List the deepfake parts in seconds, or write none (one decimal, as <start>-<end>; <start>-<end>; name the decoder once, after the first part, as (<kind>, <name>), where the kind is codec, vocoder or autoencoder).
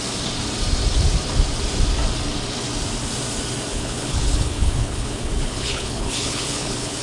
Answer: 3.7-7.0 (codec, HILCodec)